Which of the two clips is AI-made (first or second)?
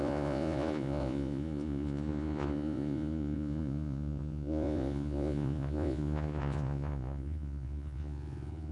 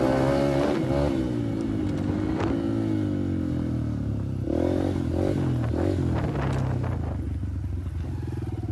first